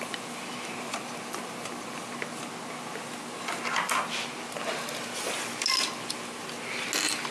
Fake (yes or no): no